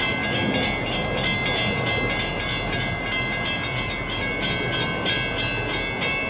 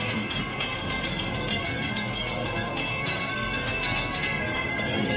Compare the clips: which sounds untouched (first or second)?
first